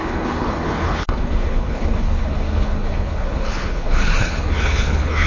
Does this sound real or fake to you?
fake